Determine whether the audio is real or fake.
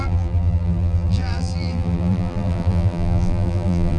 fake